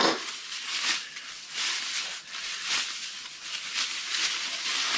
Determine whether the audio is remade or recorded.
recorded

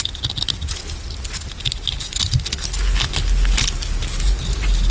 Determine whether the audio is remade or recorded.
recorded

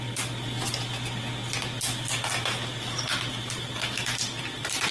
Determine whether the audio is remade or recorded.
recorded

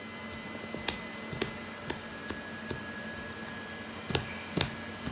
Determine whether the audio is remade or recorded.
recorded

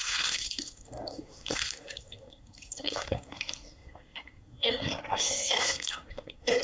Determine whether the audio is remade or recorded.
remade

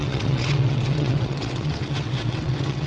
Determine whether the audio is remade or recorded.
remade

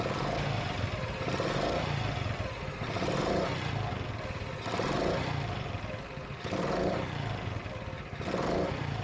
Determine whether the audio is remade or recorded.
recorded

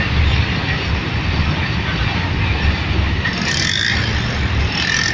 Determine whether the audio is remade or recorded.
recorded